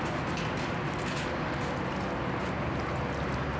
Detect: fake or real real